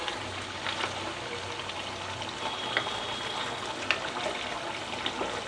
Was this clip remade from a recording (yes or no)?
no